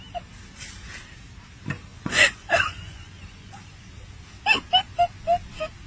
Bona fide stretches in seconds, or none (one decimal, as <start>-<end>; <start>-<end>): 0.0-1.9; 3.9-5.9